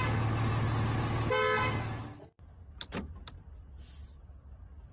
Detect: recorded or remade recorded